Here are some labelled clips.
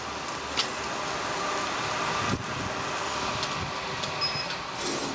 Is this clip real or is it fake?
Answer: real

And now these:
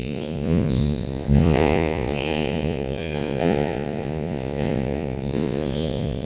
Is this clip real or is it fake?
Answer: fake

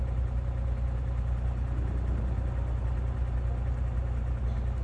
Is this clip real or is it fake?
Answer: real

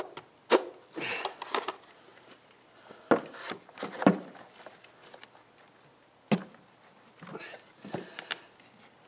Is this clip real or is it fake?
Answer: real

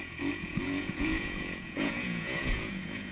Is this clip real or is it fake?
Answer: fake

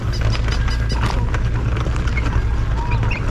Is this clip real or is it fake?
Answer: real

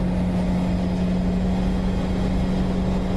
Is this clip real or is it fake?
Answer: real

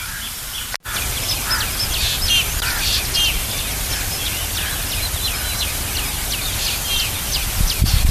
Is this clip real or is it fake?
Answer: real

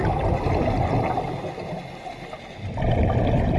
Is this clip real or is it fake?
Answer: real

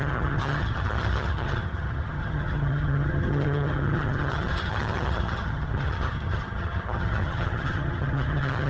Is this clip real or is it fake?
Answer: fake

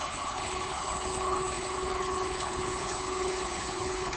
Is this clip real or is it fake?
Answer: fake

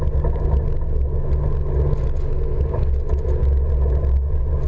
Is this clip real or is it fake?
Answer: real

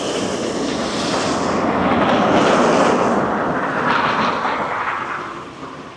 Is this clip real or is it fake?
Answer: fake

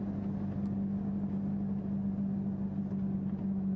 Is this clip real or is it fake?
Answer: real